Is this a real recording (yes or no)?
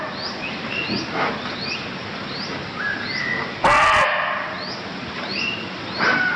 yes